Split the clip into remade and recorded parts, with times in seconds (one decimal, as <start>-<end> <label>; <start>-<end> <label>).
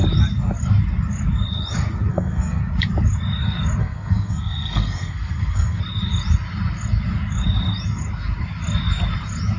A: 0.0-2.1 recorded; 2.1-2.6 remade; 2.6-3.8 recorded; 3.8-5.8 remade; 5.8-9.6 recorded